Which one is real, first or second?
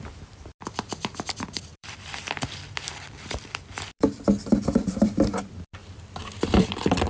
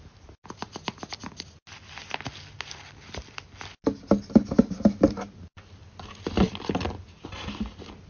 second